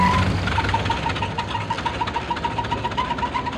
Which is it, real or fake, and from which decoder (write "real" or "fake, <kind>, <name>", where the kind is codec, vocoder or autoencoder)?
real